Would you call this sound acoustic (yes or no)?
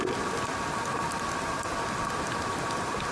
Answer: yes